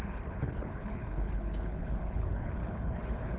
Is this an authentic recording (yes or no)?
no